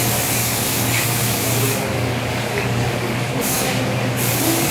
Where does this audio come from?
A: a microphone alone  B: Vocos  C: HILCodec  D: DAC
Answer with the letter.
D